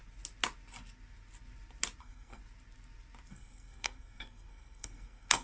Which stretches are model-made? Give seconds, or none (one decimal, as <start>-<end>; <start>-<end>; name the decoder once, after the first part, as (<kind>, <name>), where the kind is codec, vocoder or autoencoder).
2.0-2.4 (codec, SNAC); 3.3-5.4